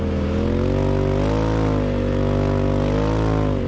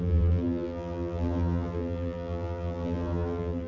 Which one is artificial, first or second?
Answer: second